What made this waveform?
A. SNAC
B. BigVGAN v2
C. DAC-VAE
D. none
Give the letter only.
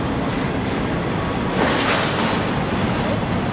D